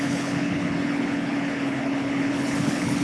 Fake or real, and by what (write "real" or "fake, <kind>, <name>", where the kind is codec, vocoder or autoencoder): fake, codec, HILCodec